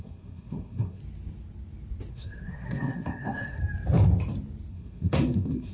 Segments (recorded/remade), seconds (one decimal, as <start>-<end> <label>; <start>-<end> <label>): 0.0-1.0 remade; 1.0-2.1 recorded; 2.1-3.6 remade; 3.6-4.7 recorded; 4.7-5.7 remade